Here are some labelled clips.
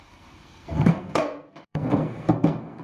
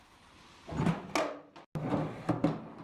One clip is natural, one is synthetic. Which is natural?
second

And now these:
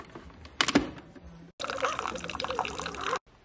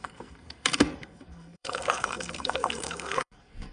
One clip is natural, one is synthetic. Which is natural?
first